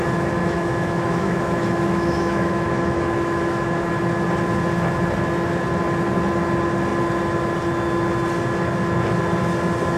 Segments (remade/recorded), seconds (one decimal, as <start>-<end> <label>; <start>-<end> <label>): 0.0-0.4 recorded; 0.4-3.9 remade; 3.9-10.0 recorded